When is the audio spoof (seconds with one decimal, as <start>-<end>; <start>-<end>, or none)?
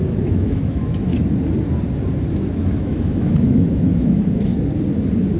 0.0-1.1; 2.3-4.5